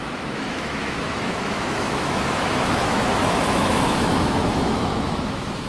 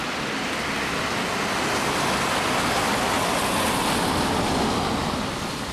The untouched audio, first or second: second